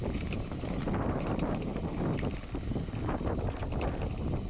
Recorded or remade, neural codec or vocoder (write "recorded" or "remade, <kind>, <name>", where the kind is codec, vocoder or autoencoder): recorded